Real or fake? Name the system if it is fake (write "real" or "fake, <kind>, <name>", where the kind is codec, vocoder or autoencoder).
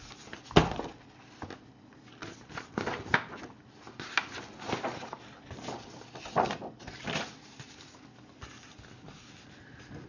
real